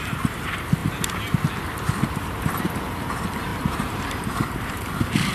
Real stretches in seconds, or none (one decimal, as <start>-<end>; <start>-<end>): 0.0-3.5